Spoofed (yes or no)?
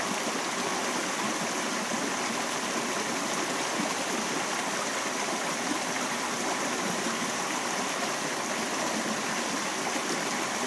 no